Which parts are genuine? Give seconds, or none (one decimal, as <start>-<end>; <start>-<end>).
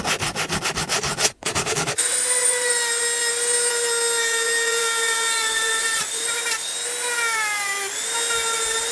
0.0-1.1; 3.0-4.8; 6.4-8.9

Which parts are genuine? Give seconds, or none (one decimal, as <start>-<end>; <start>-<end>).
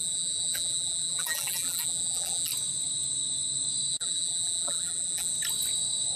2.5-3.9; 5.3-6.2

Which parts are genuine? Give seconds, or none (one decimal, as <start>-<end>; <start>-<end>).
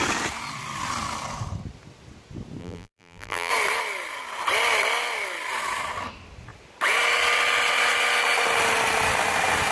0.0-2.6; 3.5-9.7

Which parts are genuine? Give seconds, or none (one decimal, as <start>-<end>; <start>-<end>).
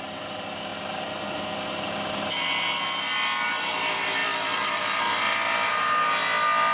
0.0-4.2; 5.0-6.7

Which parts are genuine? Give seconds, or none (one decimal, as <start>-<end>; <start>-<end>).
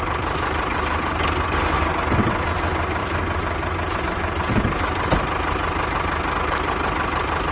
0.0-7.5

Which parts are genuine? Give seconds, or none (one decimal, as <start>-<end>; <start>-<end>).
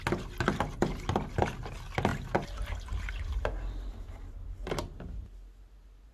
0.0-6.1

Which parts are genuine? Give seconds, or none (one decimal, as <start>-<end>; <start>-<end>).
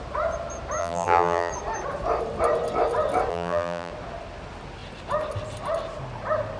0.0-0.8; 1.5-3.3; 3.9-6.6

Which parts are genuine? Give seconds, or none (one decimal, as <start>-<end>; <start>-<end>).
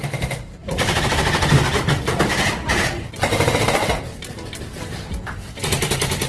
0.0-6.3